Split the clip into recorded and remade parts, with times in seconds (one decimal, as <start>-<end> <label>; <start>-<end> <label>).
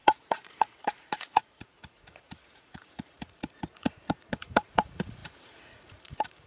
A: 0.0-6.5 remade